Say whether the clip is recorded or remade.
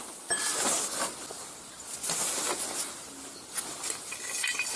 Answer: recorded